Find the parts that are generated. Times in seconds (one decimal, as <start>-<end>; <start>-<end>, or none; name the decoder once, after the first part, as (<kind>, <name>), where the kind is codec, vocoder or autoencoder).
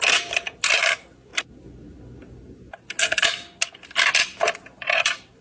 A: 0.0-1.3 (vocoder, BigVGAN v2); 4.2-5.4